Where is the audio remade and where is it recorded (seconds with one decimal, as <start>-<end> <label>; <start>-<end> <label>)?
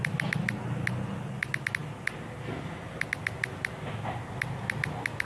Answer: 0.0-5.2 recorded